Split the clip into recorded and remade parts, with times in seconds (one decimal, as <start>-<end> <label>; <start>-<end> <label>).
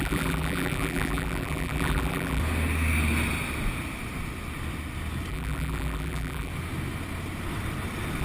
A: 0.0-2.4 remade; 2.4-5.3 recorded; 5.3-6.5 remade; 6.5-8.2 recorded